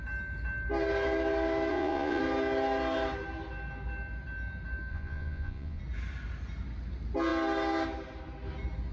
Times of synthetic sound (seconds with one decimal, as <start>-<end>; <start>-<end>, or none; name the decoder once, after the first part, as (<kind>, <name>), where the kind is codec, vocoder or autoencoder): 1.7-2.2 (vocoder, Vocos); 4.9-5.8